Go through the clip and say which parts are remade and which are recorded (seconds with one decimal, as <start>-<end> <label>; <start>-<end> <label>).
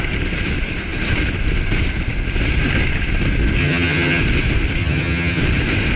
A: 0.0-3.6 recorded; 3.6-4.2 remade; 4.2-4.8 recorded; 4.8-5.4 remade; 5.4-6.0 recorded